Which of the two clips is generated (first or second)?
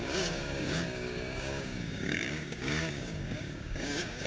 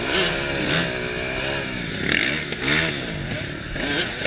first